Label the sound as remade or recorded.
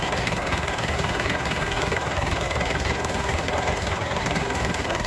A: remade